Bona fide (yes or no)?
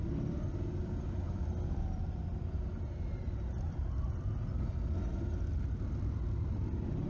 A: yes